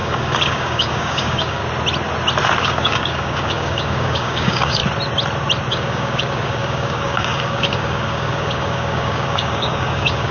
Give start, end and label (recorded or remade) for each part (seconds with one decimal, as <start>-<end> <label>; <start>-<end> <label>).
0.0-1.6 remade; 1.6-2.6 recorded; 2.6-4.8 remade; 4.8-5.7 recorded; 5.7-10.3 remade